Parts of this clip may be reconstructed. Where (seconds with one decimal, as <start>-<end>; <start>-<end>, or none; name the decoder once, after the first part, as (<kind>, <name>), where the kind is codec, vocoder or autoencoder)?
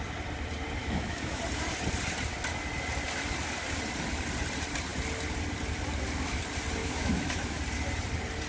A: 0.8-1.4 (autoencoder, DAC-VAE); 6.8-7.6